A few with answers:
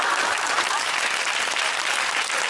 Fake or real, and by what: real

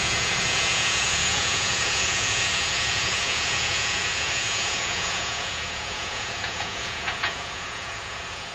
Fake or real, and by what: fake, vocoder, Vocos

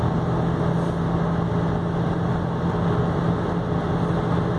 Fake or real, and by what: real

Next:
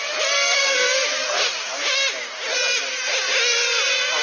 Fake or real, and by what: real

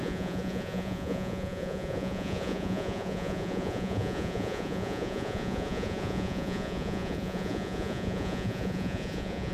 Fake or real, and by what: fake, vocoder, Vocos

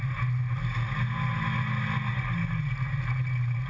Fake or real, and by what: real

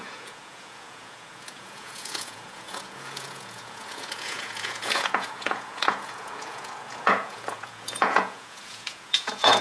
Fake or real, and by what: fake, vocoder, Vocos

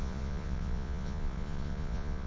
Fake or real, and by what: fake, vocoder, Vocos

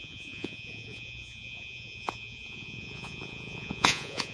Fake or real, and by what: fake, vocoder, Vocos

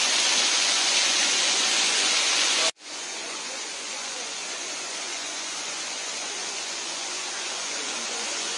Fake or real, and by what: fake, vocoder, Vocos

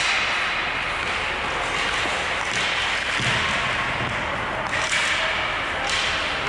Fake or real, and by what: real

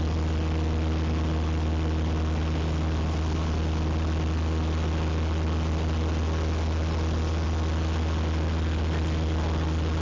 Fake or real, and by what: real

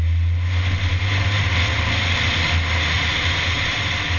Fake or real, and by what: real